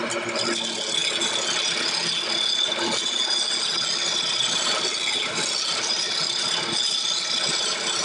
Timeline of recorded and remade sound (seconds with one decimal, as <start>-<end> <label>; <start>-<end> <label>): 0.0-8.0 recorded

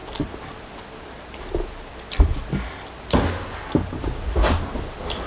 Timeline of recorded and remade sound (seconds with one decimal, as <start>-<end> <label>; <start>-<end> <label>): 0.0-5.3 recorded

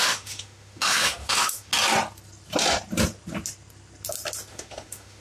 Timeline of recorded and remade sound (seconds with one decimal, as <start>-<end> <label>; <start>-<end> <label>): 0.0-1.7 remade; 1.7-4.5 recorded; 4.5-5.2 remade

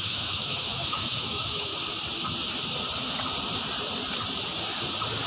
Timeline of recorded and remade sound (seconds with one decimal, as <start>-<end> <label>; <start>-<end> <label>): 0.0-1.7 remade; 1.7-5.3 recorded

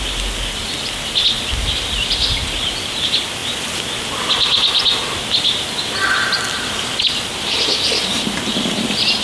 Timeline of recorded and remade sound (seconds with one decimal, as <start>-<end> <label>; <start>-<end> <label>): 0.0-9.2 recorded

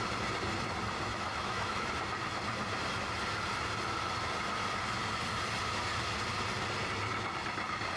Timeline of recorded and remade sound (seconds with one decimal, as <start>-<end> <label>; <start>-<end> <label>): 0.0-1.1 recorded; 1.1-1.9 remade; 1.9-8.0 recorded